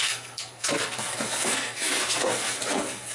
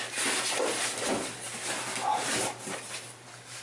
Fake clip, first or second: first